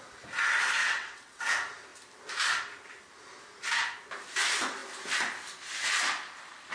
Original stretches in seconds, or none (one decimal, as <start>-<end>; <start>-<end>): 0.0-0.8; 1.4-6.7